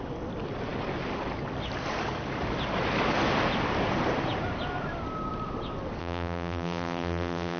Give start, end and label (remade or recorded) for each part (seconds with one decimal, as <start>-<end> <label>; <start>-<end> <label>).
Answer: 0.0-6.0 recorded; 6.0-7.6 remade